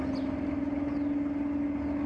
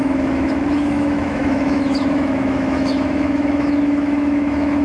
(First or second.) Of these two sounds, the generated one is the second